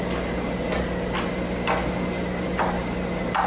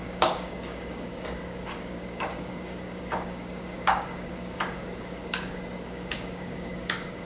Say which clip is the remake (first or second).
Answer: second